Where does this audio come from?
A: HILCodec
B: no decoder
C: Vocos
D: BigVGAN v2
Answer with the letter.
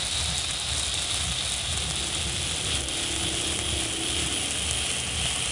B